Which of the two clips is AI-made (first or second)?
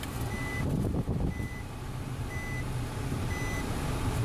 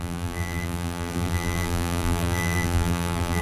second